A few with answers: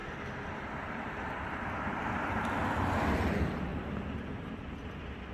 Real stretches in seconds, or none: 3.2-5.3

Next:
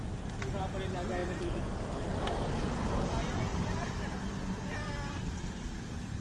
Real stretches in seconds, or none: 0.0-3.5; 4.1-6.2